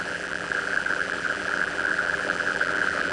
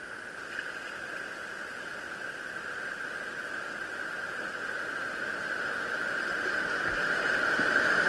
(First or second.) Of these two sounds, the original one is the second